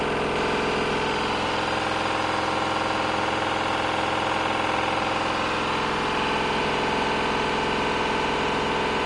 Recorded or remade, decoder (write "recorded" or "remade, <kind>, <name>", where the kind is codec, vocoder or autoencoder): recorded